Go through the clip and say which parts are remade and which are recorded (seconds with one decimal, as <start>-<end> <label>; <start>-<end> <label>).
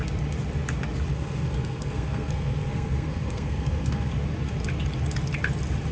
0.0-1.1 recorded; 1.1-4.1 remade; 4.1-5.9 recorded